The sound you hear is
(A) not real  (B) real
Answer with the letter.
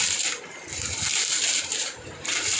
A